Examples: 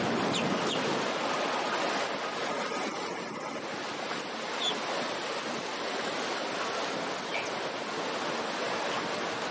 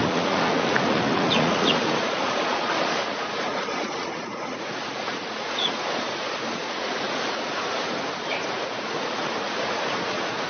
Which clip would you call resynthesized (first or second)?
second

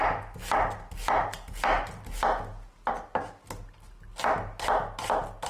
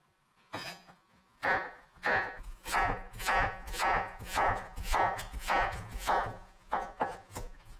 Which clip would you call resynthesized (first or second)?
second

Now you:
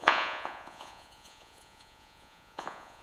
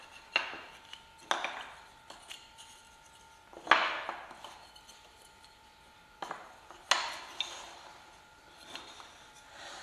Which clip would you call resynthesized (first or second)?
first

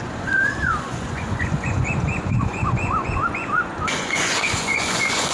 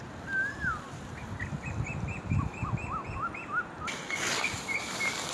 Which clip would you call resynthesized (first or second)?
first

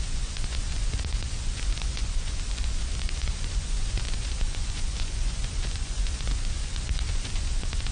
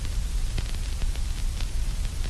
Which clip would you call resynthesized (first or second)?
first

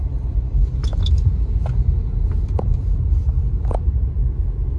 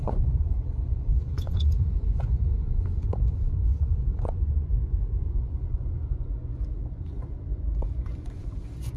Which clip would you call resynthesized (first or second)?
second